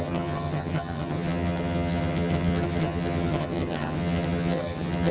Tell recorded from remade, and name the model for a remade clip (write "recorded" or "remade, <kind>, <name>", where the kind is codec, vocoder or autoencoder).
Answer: remade, vocoder, HiFi-GAN